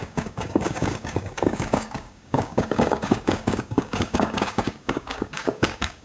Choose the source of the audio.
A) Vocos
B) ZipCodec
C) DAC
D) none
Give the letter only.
C